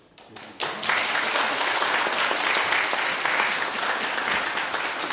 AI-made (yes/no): no